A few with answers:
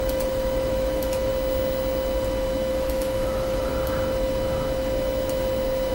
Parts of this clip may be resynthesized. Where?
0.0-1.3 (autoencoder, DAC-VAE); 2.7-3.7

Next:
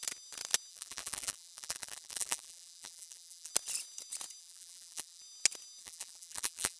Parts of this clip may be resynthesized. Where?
0.7-3.5 (vocoder, BigVGAN v2); 4.4-5.2; 5.8-6.8

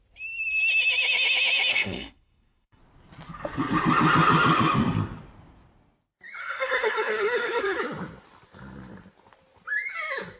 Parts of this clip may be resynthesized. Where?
1.7-2.8 (codec, SNAC); 6.4-7.8